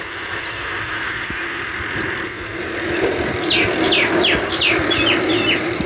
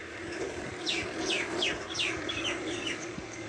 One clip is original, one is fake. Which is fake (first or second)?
second